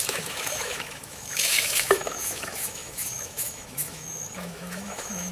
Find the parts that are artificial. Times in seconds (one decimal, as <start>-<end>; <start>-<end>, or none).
0.0-5.3